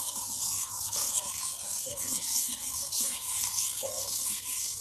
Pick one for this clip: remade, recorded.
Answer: remade